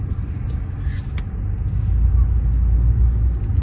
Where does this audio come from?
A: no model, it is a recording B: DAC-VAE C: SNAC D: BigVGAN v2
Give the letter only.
A